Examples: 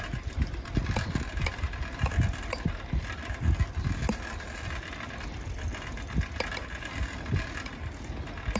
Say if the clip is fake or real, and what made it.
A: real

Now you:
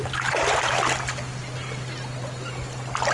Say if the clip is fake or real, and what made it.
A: real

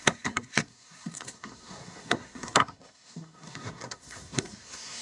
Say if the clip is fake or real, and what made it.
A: fake, codec, SNAC